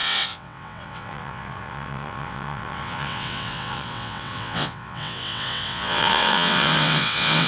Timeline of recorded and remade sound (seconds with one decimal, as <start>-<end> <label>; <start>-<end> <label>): 0.0-7.5 remade